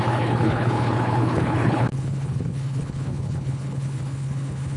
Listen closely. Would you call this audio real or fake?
fake